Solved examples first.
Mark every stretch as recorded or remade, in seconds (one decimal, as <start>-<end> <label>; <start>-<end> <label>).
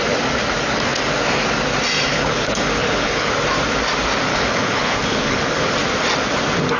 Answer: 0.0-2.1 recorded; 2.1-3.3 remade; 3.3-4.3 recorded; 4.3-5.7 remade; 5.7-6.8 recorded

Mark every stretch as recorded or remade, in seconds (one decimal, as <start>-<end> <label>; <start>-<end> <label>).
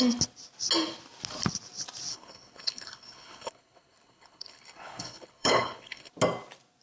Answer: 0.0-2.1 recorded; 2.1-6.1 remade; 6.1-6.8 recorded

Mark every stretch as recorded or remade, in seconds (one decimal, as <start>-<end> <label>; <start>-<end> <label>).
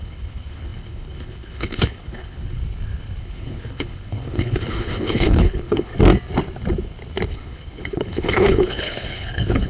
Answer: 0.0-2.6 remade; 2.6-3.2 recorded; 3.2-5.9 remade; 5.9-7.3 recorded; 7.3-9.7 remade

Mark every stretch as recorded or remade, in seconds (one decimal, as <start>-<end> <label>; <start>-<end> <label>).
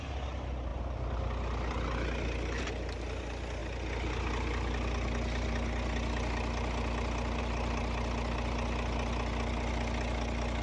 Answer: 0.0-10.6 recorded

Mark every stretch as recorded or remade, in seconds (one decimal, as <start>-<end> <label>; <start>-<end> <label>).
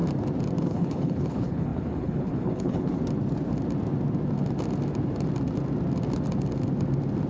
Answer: 0.0-0.6 recorded; 0.6-3.0 remade; 3.0-7.3 recorded